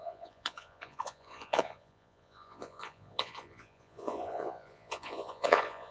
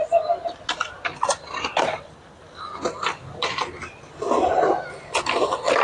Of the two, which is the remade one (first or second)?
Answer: first